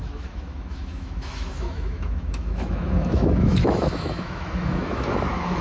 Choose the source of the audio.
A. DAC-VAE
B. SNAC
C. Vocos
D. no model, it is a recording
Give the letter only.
A